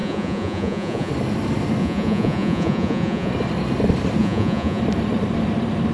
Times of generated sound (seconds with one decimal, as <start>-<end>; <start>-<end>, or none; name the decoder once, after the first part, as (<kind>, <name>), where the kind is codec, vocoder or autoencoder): 0.0-1.1 (vocoder, Vocos); 1.8-3.3; 4.2-4.8